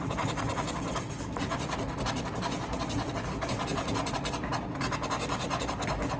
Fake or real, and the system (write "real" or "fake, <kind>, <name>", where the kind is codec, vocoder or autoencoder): real